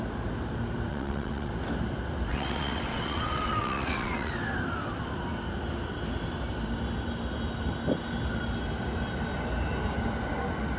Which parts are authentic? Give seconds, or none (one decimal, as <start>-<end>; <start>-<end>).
0.0-0.9; 1.5-2.3; 4.3-10.8